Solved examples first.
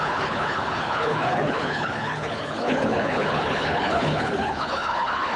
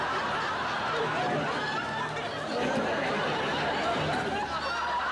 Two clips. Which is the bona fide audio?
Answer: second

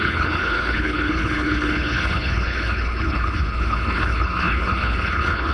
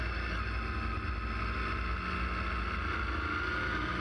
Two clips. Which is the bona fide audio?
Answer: second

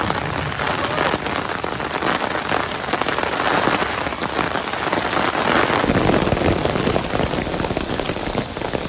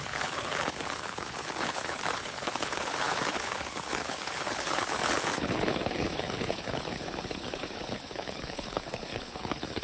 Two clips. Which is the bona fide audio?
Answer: first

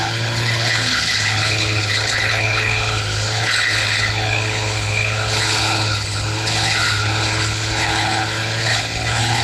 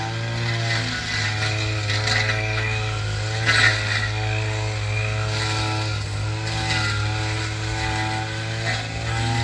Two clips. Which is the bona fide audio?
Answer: second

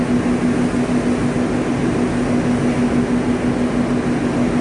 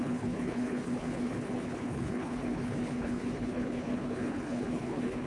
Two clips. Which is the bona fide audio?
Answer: first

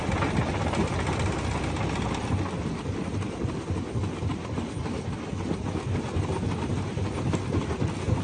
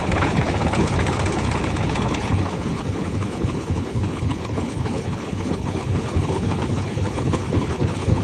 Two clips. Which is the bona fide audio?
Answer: first